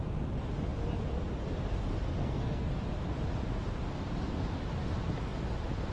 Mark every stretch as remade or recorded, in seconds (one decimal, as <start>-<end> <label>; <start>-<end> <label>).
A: 0.0-2.2 recorded; 2.2-2.7 remade; 2.7-5.9 recorded